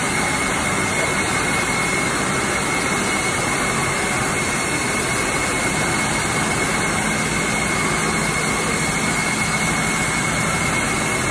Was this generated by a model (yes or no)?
no